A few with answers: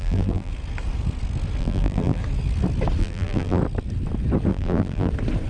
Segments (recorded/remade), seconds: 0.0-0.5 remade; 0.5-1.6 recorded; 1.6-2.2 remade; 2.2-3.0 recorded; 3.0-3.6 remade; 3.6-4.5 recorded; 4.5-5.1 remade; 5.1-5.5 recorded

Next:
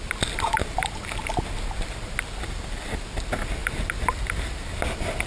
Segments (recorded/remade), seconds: 0.0-5.3 recorded

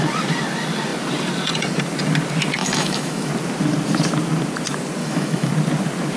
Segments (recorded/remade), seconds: 0.0-2.6 recorded; 2.6-3.3 remade; 3.3-5.0 recorded; 5.0-5.5 remade; 5.5-6.2 recorded